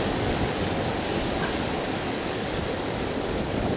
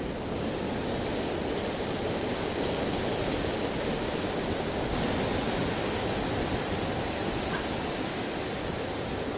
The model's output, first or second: first